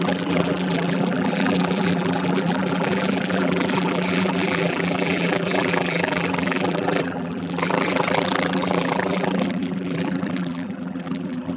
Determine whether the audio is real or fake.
fake